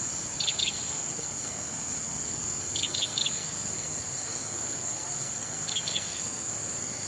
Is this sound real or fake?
fake